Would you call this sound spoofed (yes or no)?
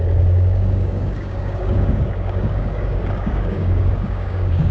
yes